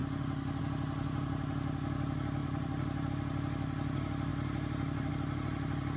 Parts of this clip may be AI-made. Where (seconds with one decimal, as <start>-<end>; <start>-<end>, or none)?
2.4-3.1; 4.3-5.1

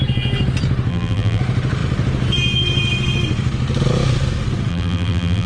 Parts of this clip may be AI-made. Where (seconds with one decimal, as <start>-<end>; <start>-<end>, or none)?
0.9-1.4; 4.7-5.5

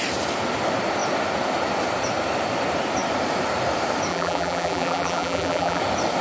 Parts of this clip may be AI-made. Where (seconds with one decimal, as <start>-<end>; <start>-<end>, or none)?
4.1-5.8

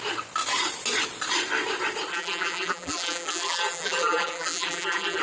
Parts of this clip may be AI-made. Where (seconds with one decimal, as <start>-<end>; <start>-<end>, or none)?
2.1-5.2

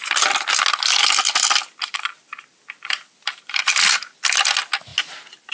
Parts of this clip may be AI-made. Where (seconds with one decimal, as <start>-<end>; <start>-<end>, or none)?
2.5-4.5

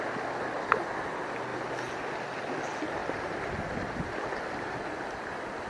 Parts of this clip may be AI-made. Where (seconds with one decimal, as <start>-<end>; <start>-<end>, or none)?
none

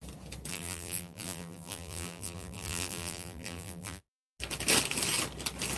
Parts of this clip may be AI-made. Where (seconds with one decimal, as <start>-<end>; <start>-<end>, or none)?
0.5-4.0